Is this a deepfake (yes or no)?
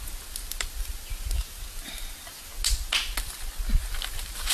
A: no